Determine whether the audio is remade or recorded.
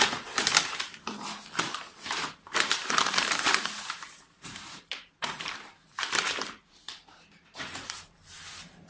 remade